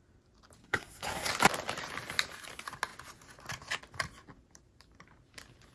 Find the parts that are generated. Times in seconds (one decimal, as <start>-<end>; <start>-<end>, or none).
0.6-1.3